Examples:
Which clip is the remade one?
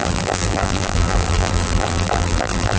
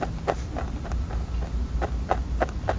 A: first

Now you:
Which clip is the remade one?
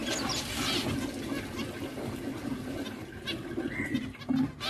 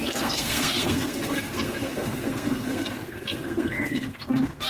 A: second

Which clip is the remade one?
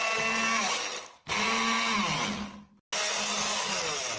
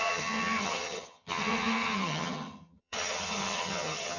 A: second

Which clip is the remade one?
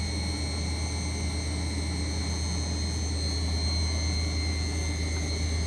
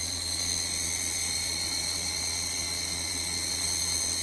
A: second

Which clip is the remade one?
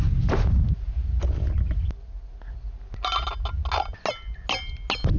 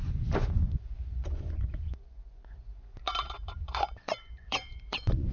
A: second